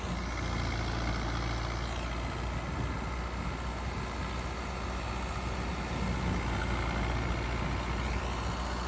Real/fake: real